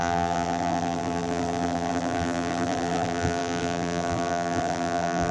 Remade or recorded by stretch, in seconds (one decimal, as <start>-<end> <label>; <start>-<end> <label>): 0.0-5.3 remade